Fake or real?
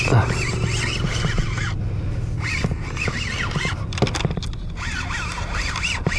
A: real